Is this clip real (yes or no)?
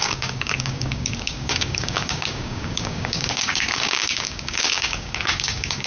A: no